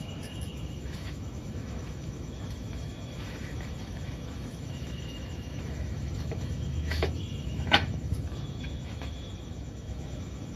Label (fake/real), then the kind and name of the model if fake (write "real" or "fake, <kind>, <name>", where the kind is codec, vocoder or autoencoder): fake, autoencoder, DAC-VAE